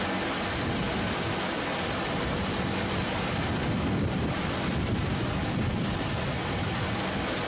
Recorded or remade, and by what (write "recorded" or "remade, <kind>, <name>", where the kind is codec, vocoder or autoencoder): recorded